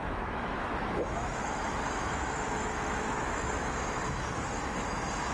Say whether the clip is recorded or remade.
remade